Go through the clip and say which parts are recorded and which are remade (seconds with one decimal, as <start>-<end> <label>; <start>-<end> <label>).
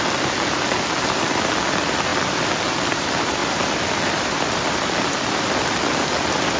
0.0-6.6 recorded